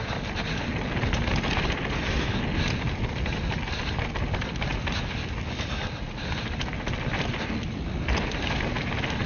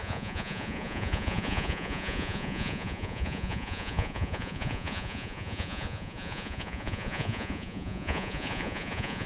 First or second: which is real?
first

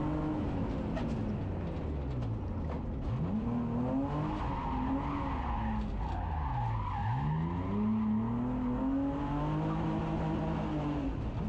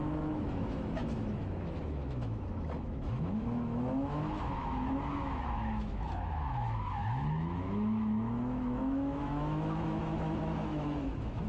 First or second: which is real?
first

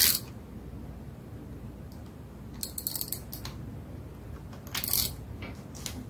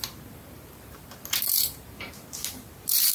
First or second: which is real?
first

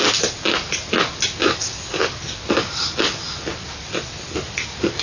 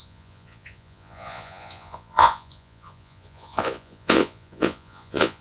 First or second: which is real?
first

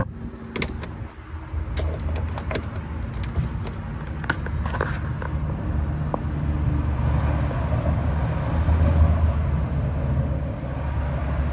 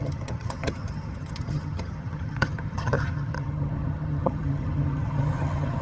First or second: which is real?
first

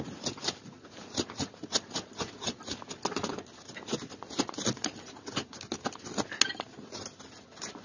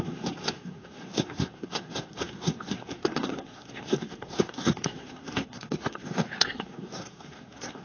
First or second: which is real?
first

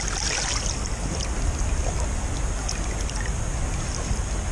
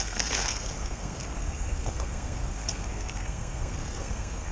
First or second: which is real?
first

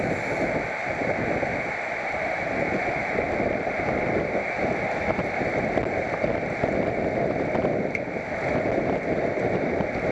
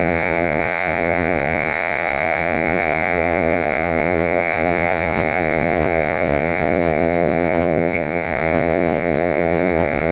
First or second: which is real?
first